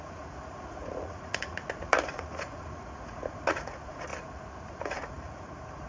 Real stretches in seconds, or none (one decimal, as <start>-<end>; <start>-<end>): 4.1-4.6